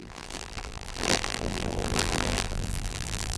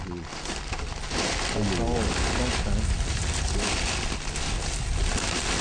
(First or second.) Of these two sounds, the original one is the second